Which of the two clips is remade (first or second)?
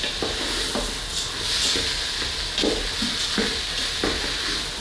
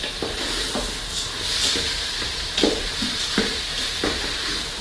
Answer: second